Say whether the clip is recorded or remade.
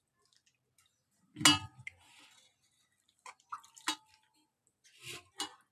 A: recorded